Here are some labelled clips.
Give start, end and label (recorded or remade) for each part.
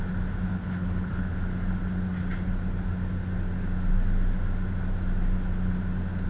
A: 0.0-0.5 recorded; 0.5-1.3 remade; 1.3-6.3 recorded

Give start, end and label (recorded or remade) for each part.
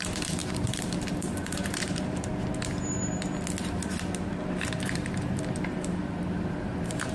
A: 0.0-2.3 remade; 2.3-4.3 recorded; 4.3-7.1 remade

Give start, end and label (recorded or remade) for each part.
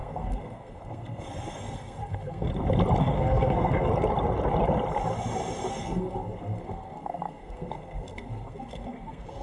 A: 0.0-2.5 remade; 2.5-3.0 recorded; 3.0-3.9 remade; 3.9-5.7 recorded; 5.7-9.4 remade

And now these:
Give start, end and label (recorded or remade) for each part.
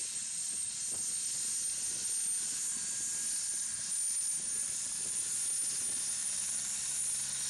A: 0.0-4.6 recorded; 4.6-5.2 remade; 5.2-6.2 recorded; 6.2-7.0 remade; 7.0-7.5 recorded